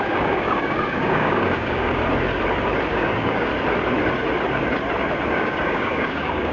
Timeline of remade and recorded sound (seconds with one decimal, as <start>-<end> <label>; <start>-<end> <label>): 0.0-2.0 remade; 2.0-2.9 recorded; 2.9-3.5 remade; 3.5-5.3 recorded; 5.3-6.5 remade